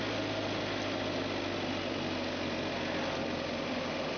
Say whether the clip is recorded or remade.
recorded